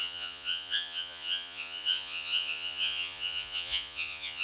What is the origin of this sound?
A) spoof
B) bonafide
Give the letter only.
A